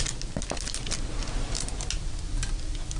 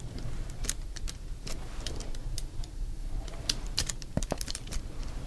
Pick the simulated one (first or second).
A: second